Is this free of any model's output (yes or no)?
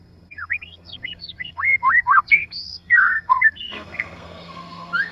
no